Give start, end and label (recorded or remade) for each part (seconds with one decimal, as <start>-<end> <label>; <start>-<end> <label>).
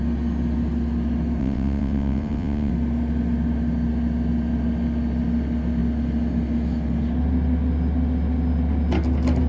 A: 0.0-1.4 recorded; 1.4-2.7 remade; 2.7-9.5 recorded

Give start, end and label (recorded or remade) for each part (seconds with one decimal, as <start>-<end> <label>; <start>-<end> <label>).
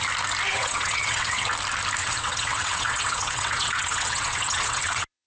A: 0.0-0.5 recorded; 0.5-1.5 remade; 1.5-2.0 recorded; 2.0-5.3 remade